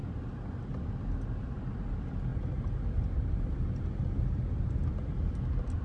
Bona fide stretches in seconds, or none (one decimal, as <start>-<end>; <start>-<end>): 0.0-2.3; 3.5-5.8